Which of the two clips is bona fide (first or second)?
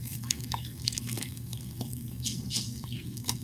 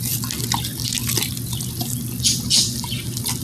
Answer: second